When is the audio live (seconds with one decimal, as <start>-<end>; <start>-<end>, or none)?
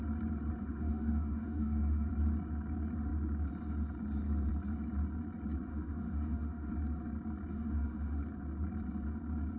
0.0-0.6; 2.1-5.7; 6.7-7.5; 8.2-9.6